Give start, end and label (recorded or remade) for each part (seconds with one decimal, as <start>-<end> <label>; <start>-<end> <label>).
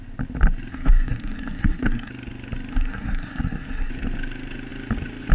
0.0-0.7 recorded; 0.7-2.1 remade; 2.1-2.7 recorded; 2.7-3.9 remade; 3.9-5.3 recorded